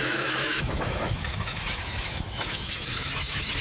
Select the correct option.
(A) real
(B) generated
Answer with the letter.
B